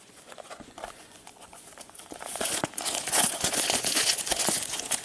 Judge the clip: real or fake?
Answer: fake